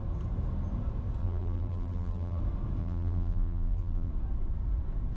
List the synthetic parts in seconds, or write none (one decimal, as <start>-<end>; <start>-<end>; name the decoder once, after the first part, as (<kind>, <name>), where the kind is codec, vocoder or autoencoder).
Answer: 1.2-2.4 (vocoder, BigVGAN v2); 2.8-4.1